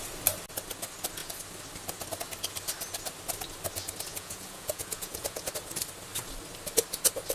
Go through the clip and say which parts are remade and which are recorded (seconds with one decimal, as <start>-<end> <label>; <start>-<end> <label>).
0.0-4.1 recorded; 4.1-5.5 remade; 5.5-7.3 recorded

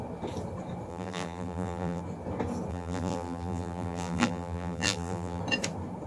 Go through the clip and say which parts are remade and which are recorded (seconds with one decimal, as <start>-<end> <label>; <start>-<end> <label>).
0.0-0.9 recorded; 0.9-2.0 remade; 2.0-2.7 recorded; 2.7-5.4 remade; 5.4-6.1 recorded

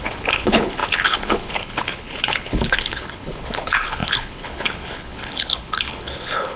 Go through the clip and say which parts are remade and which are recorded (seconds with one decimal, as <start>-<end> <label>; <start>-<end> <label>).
0.0-6.6 remade

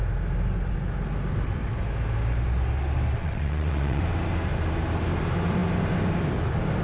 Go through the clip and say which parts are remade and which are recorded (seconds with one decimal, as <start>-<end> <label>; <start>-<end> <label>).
0.0-3.2 recorded; 3.2-4.0 remade; 4.0-6.8 recorded

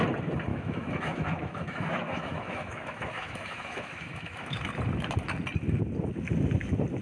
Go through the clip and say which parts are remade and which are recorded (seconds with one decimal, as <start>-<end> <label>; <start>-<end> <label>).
0.0-0.5 recorded; 0.5-4.7 remade; 4.7-7.0 recorded

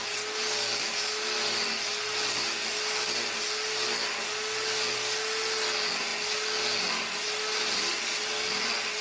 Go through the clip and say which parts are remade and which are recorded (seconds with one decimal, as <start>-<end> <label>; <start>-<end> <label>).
0.0-9.0 recorded

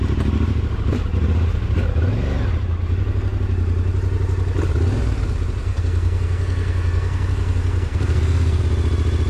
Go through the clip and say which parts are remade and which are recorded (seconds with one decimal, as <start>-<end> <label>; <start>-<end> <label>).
0.0-5.6 recorded; 5.6-8.6 remade; 8.6-9.3 recorded

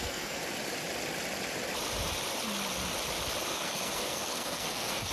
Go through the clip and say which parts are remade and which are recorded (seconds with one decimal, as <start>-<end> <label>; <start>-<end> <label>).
0.0-0.4 remade; 0.4-3.5 recorded; 3.5-5.1 remade